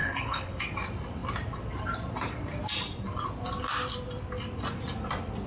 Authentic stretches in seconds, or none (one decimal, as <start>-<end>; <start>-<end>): 0.6-5.5